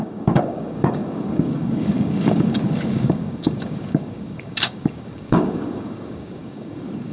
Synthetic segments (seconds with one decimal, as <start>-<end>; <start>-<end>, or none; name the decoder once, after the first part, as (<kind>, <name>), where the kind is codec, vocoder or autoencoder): 0.0-7.1 (codec, DAC)

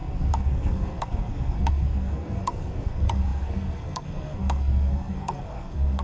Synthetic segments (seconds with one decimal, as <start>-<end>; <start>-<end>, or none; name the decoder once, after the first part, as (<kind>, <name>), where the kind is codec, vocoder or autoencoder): 0.0-6.0 (codec, SNAC)

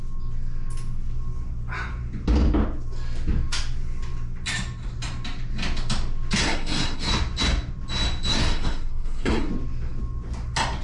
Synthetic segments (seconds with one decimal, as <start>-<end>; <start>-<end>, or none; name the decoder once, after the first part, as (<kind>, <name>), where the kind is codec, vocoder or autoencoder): 6.4-7.1 (codec, SNAC); 8.3-9.5

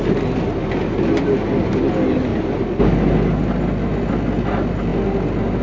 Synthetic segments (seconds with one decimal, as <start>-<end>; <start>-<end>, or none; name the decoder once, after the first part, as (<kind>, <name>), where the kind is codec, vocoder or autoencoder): none

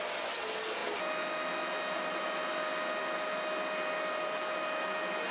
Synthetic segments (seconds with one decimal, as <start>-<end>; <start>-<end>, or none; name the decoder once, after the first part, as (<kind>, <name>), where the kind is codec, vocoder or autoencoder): none

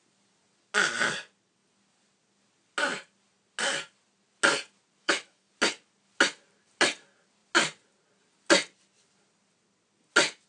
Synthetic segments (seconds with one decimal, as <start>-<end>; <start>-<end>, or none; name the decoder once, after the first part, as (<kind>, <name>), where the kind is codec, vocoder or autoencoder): 5.0-5.5 (autoencoder, DAC-VAE)